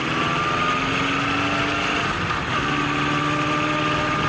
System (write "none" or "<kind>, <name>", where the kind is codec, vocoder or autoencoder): none